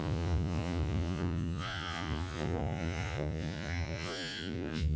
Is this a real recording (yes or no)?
no